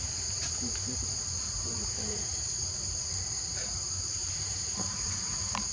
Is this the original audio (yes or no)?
no